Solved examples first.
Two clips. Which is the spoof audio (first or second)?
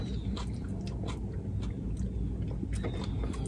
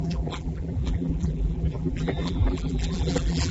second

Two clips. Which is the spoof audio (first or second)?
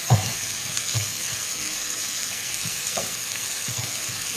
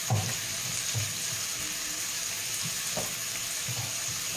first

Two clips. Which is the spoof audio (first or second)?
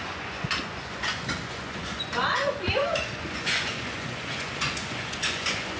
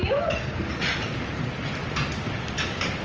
first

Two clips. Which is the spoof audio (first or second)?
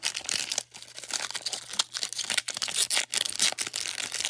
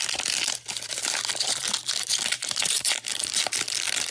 second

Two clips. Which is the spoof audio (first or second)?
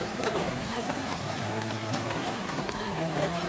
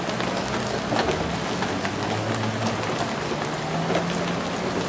first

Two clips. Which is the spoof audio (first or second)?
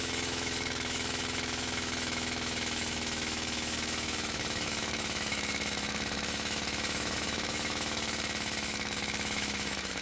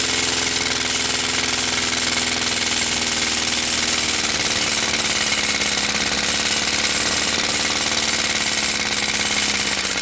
first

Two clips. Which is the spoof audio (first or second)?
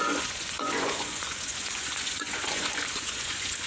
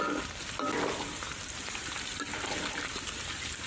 first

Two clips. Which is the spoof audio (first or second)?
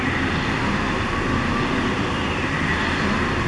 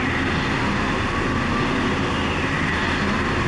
first